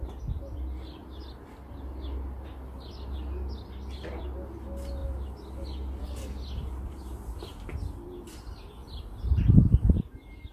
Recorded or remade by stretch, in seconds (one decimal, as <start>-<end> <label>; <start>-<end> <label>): 0.0-10.5 recorded